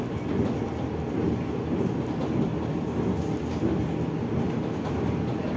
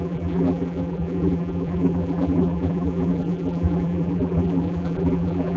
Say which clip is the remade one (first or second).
second